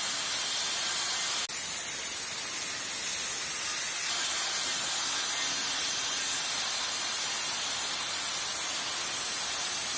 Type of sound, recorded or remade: recorded